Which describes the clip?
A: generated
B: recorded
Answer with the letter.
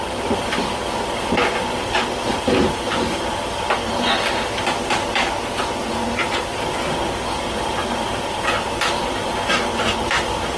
A